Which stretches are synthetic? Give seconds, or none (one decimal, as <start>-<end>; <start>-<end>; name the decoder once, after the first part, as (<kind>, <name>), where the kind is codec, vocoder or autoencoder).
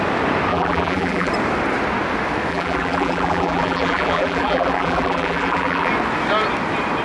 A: 0.5-1.3 (vocoder, BigVGAN v2); 2.5-5.9